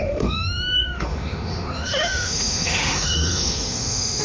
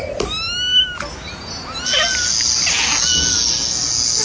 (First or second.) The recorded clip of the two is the second